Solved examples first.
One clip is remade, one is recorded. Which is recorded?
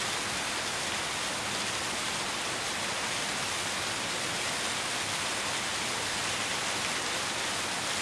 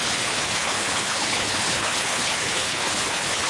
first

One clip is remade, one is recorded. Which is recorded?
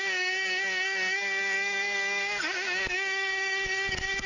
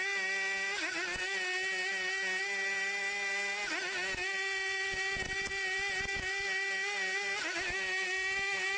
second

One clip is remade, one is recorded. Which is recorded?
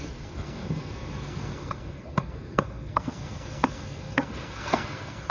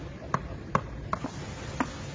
second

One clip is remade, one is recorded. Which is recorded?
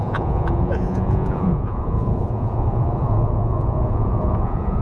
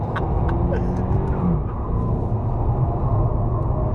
second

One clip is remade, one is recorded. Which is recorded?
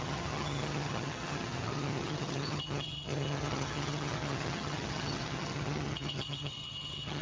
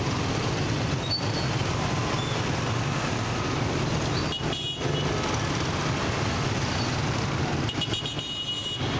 second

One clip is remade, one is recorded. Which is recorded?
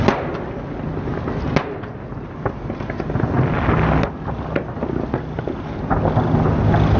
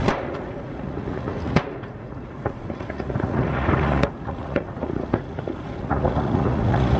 first